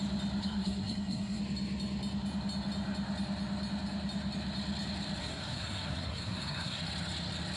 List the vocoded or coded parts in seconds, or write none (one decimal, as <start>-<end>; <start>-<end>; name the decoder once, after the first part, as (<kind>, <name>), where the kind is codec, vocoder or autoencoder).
0.4-1.4 (codec, SNAC); 5.2-6.8